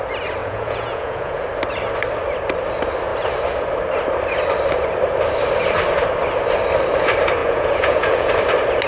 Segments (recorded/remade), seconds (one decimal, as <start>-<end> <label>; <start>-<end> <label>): 0.0-0.4 recorded; 0.4-1.4 remade; 1.4-7.4 recorded; 7.4-8.3 remade; 8.3-8.9 recorded